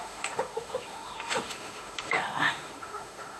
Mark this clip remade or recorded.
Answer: remade